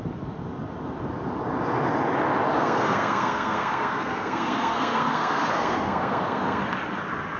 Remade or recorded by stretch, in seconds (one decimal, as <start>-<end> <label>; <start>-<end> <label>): 0.0-2.6 recorded; 2.6-6.6 remade; 6.6-7.4 recorded